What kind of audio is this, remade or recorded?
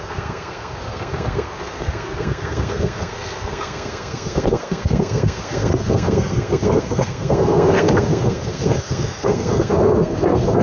remade